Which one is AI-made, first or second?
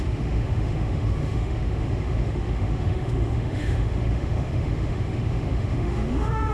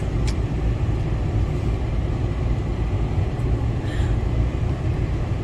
first